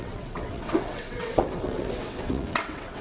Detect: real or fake fake